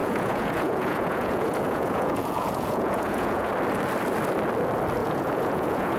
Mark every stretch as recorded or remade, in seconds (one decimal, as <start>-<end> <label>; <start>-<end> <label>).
0.0-3.5 remade; 3.5-5.0 recorded; 5.0-6.0 remade